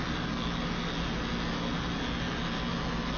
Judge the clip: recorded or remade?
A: recorded